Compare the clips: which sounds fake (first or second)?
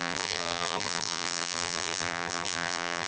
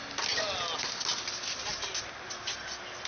first